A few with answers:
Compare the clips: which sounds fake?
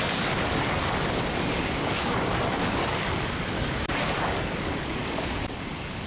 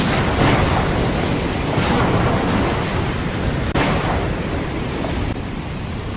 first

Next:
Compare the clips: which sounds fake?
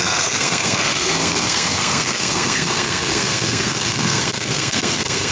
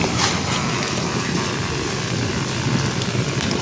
first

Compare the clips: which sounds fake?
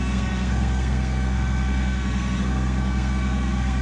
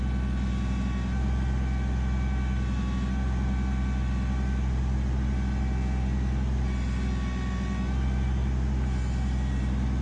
first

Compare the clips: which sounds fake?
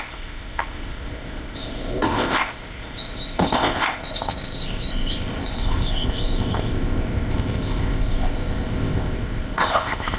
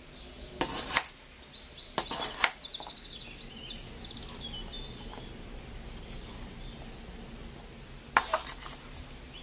first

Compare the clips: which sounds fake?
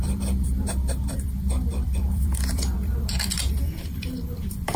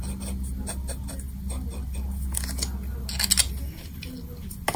first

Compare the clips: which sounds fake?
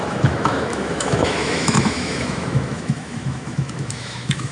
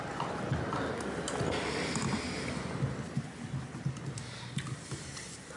first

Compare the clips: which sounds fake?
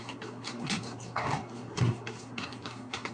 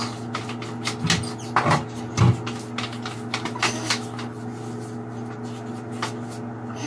first